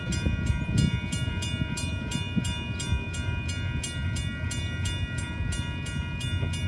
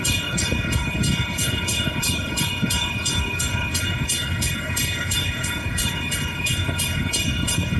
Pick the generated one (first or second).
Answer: second